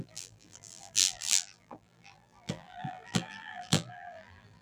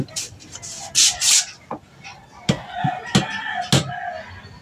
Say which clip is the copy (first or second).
first